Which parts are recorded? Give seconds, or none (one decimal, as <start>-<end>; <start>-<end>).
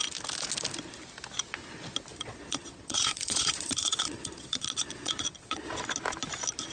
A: 0.0-2.1; 5.7-6.7